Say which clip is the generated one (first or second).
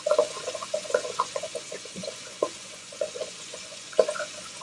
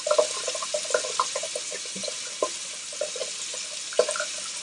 first